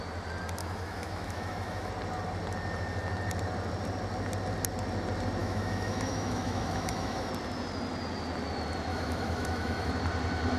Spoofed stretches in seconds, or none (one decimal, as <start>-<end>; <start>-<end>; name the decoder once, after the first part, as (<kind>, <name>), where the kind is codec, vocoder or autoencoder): 0.6-1.9 (autoencoder, DAC-VAE); 5.4-7.3; 8.9-9.9